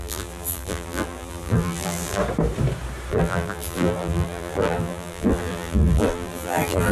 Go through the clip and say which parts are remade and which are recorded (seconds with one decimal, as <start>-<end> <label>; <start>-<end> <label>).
0.0-2.2 remade; 2.2-3.1 recorded; 3.1-6.9 remade